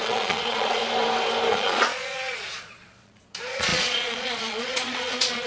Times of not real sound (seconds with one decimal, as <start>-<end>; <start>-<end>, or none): 0.0-0.8; 1.5-5.5